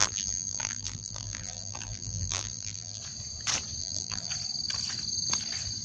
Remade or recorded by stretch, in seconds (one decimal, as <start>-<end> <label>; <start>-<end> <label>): 0.0-3.0 remade; 3.0-3.8 recorded; 3.8-4.3 remade; 4.3-5.8 recorded